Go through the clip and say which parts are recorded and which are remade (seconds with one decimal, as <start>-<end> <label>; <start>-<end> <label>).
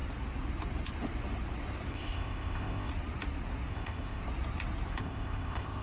0.0-1.9 recorded; 1.9-2.9 remade; 2.9-3.7 recorded; 3.7-4.2 remade; 4.2-5.0 recorded; 5.0-5.8 remade